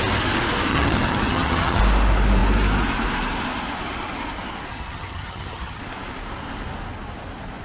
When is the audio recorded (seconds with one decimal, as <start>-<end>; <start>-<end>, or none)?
0.0-0.7; 1.8-4.7; 5.8-7.6